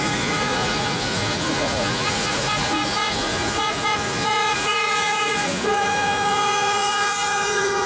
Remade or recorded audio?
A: remade